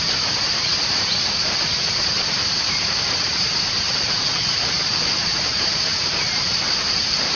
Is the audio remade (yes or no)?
yes